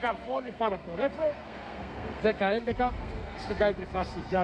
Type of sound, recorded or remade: remade